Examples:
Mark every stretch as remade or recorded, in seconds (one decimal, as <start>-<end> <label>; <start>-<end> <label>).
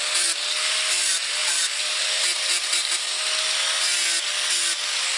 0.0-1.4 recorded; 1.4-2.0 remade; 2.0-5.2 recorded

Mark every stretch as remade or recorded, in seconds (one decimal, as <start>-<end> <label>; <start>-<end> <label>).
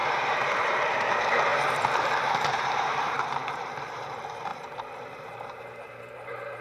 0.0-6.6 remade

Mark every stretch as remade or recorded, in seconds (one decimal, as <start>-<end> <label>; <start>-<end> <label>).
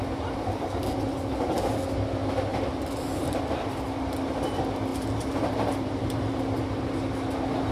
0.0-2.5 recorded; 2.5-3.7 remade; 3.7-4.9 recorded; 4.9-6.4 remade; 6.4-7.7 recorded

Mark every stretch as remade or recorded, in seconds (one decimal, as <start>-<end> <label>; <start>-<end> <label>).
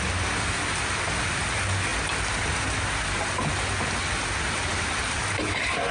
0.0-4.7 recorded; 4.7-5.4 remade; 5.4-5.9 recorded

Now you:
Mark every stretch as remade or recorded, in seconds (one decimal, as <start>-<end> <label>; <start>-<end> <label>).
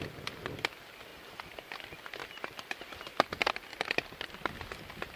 0.0-1.1 recorded; 1.1-1.6 remade; 1.6-2.2 recorded; 2.2-2.8 remade; 2.8-5.2 recorded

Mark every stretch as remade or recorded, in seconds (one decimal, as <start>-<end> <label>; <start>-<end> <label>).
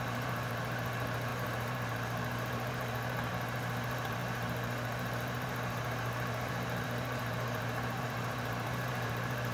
0.0-9.5 remade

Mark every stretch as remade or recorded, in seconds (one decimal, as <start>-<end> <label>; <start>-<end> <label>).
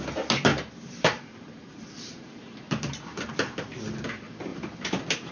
0.0-0.5 recorded; 0.5-3.3 remade; 3.3-4.5 recorded; 4.5-5.3 remade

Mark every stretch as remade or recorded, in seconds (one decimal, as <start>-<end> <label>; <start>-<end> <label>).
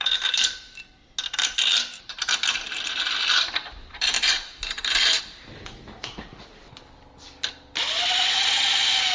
0.0-3.8 recorded; 3.8-5.2 remade; 5.2-9.1 recorded